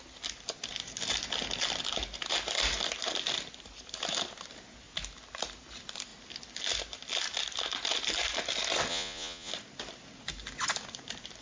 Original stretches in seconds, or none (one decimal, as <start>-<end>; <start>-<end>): 0.0-8.9; 9.5-11.4